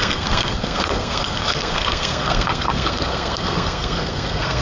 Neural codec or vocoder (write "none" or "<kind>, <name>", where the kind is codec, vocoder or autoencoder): codec, SNAC